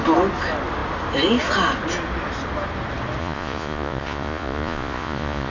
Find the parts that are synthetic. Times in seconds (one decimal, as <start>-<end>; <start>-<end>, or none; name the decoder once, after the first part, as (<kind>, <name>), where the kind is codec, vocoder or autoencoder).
3.2-5.5 (vocoder, Vocos)